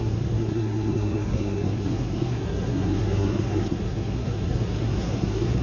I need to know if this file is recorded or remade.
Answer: remade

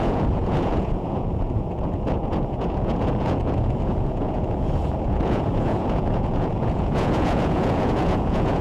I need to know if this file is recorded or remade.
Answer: remade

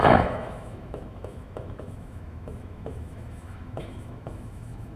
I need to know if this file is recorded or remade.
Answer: remade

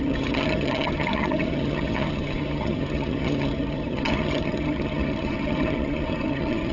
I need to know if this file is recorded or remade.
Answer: remade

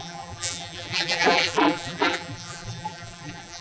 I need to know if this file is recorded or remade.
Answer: remade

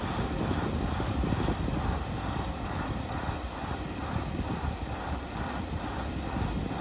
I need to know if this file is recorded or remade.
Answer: recorded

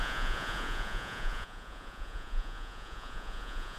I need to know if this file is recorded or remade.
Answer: remade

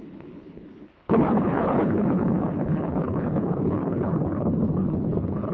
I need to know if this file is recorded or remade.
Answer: remade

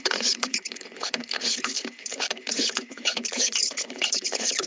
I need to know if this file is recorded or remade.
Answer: remade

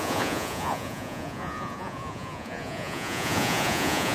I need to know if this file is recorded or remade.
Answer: remade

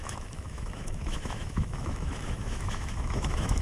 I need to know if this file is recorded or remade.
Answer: remade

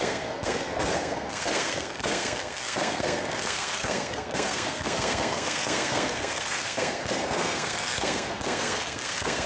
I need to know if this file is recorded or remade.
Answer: remade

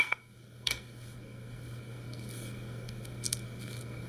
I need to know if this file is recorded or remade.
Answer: remade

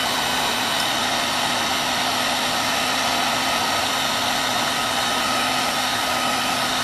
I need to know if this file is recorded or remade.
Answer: recorded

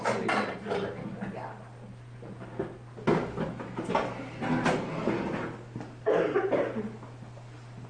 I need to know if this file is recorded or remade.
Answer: recorded